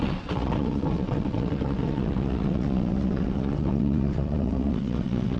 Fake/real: fake